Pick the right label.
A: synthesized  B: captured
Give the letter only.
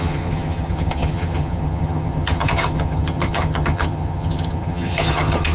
A